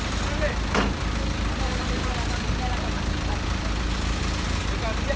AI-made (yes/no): no